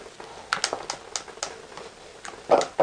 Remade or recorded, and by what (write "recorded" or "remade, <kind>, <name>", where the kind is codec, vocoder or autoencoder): recorded